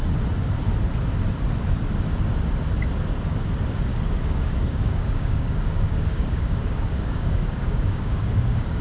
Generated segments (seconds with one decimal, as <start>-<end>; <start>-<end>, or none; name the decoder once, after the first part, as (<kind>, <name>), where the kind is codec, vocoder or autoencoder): 3.9-8.8 (codec, DAC)